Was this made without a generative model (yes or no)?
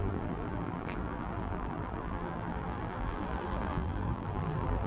no